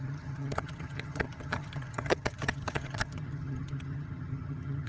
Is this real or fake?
fake